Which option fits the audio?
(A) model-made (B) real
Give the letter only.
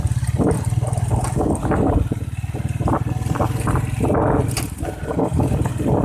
B